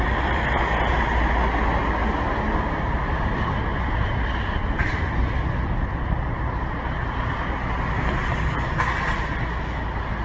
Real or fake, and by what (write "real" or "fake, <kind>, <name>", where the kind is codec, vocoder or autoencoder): real